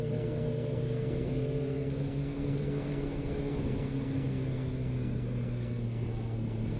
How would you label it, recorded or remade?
remade